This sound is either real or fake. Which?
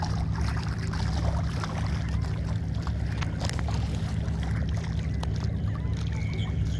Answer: real